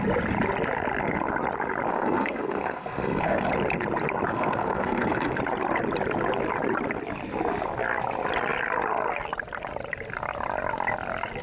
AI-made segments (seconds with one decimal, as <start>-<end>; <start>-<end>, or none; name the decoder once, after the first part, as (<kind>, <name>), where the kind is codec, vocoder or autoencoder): 1.9-3.5 (codec, SNAC); 4.3-5.4